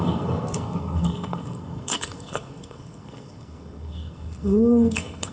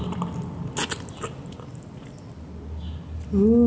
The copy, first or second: first